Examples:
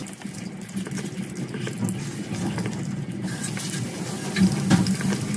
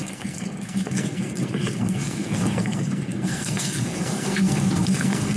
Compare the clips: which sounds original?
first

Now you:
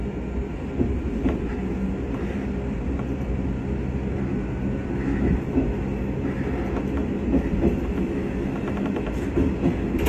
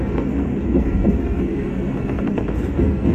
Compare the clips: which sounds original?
first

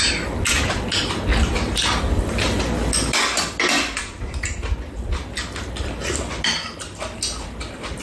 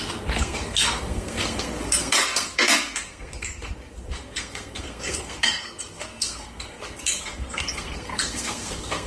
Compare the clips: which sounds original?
first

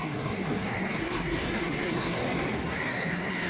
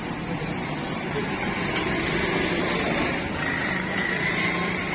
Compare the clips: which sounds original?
second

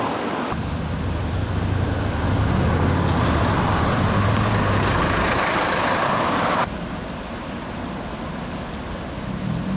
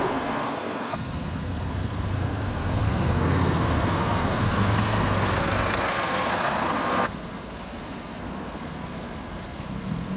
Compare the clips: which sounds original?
first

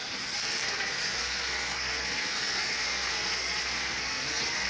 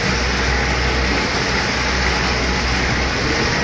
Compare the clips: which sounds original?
second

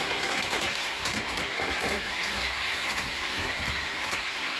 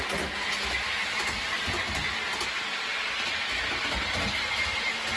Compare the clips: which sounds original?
second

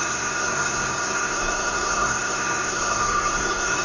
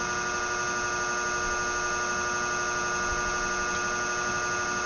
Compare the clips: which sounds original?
second